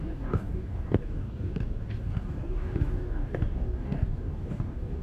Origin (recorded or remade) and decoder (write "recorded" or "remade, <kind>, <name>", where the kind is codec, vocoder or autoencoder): remade, codec, DAC